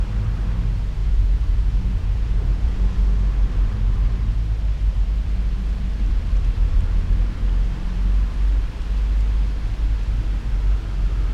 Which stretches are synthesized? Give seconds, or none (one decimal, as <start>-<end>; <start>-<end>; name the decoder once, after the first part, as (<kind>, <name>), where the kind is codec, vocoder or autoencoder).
1.0-2.8 (vocoder, Vocos)